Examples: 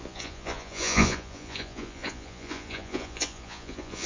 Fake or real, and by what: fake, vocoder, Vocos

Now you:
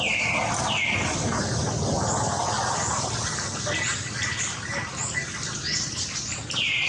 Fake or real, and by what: real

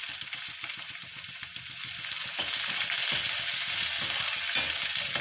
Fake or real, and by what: real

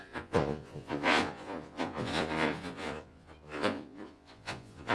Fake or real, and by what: fake, vocoder, Vocos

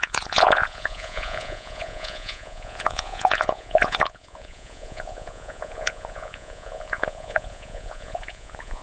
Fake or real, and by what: fake, vocoder, Vocos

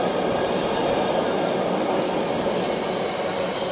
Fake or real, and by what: real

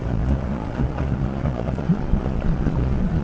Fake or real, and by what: fake, vocoder, Vocos